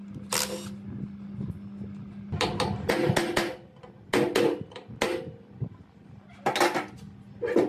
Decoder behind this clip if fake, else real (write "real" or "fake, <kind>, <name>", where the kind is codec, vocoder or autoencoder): real